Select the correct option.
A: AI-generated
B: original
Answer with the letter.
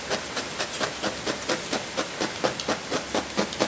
B